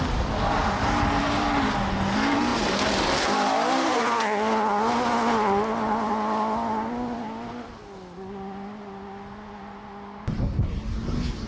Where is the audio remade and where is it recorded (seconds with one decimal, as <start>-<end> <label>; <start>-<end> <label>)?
0.0-11.5 recorded